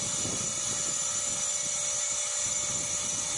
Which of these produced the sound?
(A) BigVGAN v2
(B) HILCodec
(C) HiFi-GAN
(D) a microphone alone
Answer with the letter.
D